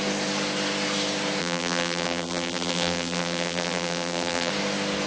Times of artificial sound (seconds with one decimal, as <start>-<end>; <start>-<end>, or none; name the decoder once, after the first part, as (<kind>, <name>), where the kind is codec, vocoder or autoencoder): 1.4-4.5 (vocoder, BigVGAN v2)